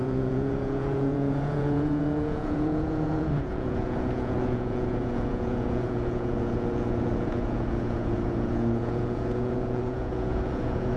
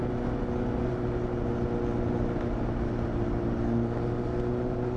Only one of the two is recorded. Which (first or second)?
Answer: second